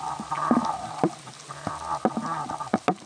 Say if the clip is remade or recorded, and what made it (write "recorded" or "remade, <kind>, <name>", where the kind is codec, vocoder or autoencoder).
recorded